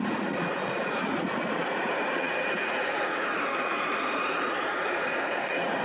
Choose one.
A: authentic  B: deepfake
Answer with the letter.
B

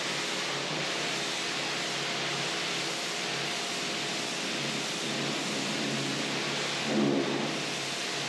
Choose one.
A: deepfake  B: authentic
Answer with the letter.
B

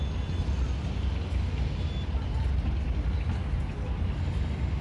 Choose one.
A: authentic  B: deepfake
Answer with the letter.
A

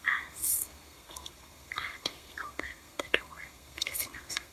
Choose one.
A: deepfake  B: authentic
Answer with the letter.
A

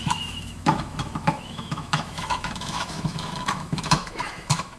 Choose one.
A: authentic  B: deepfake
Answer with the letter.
B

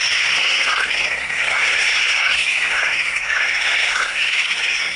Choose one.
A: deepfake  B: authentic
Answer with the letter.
A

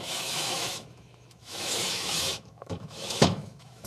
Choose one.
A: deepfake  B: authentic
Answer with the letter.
A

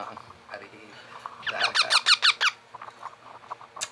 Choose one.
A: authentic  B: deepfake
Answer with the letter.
A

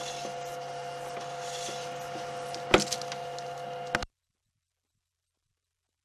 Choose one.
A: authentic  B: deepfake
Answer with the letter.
A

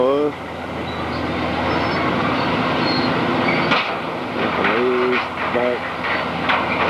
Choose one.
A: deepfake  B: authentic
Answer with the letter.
B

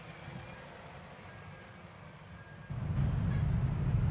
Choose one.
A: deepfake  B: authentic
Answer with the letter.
B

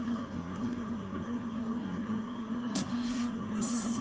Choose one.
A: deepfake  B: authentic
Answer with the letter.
A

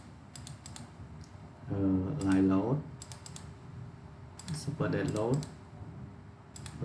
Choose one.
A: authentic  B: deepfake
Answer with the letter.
A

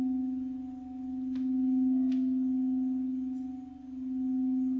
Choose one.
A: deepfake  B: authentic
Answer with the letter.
B